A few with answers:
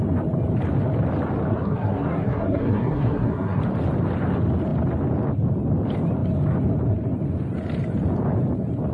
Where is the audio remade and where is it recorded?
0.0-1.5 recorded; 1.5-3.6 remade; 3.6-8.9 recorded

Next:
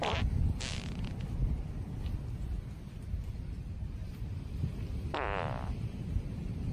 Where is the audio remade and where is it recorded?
0.0-6.7 recorded